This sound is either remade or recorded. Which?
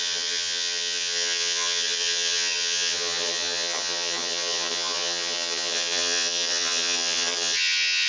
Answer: remade